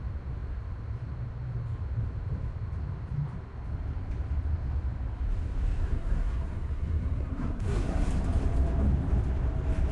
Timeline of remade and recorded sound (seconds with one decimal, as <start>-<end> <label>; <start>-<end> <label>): 0.0-5.8 recorded; 5.8-8.1 remade; 8.1-9.9 recorded